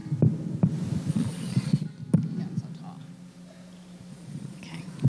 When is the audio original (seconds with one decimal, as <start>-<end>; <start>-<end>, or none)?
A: 0.0-1.1; 2.0-4.1